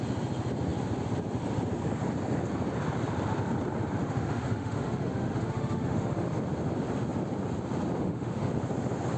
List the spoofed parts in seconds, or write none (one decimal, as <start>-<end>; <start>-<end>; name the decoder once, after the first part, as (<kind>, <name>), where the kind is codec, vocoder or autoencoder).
4.0-6.4 (autoencoder, DAC-VAE); 8.0-8.5